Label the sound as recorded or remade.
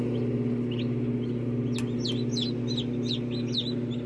recorded